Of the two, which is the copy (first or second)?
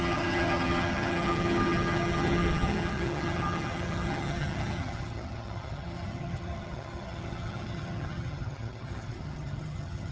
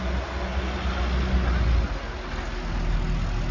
first